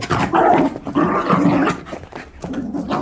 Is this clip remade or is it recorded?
recorded